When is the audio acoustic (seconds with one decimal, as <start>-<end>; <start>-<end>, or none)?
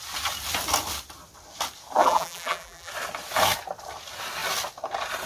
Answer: 0.0-2.0; 2.9-5.3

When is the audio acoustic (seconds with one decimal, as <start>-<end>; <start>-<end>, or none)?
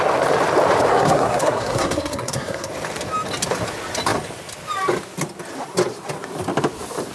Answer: 0.0-0.9; 2.7-7.1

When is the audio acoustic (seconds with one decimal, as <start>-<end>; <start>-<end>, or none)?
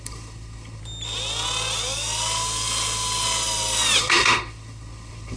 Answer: 0.8-4.0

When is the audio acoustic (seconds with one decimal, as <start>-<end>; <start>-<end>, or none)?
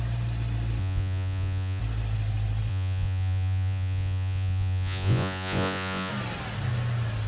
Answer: 0.0-0.8; 1.8-2.7; 6.1-7.3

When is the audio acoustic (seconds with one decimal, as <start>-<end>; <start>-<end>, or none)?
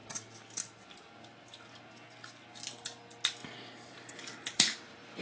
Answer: 0.0-3.4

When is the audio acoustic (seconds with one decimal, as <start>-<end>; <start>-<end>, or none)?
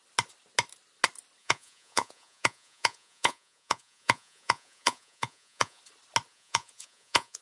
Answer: 0.0-1.4; 5.8-6.3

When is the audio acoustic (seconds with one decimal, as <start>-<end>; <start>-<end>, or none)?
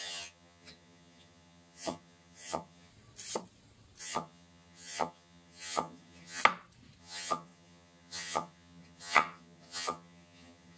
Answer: 2.9-4.0; 6.4-7.0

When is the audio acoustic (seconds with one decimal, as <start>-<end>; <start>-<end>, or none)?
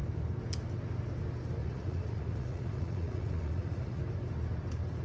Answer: 0.0-1.6; 4.0-5.0